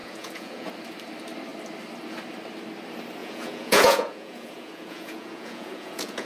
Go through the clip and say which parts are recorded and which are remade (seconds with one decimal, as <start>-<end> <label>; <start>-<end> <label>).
0.0-0.7 remade; 0.7-3.2 recorded; 3.2-6.3 remade